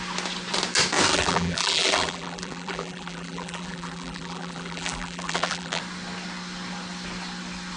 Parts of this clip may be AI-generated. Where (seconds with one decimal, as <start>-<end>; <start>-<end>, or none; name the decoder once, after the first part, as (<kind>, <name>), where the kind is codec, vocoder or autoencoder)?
1.1-5.8 (vocoder, BigVGAN v2)